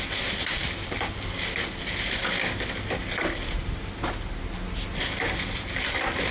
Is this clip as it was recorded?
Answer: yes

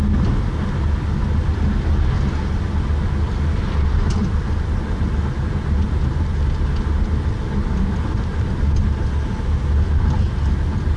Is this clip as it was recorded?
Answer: yes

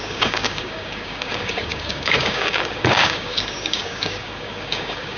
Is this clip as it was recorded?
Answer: no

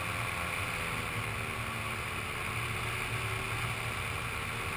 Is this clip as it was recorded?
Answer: yes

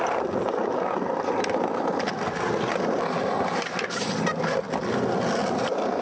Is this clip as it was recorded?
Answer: yes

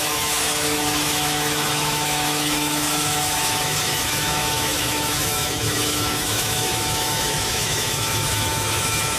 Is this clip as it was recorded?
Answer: no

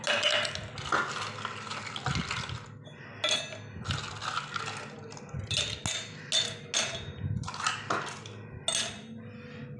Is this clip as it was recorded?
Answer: yes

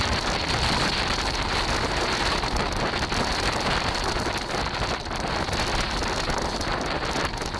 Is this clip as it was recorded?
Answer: yes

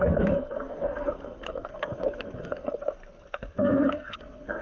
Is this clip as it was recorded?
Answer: no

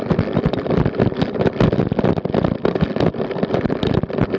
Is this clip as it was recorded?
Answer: yes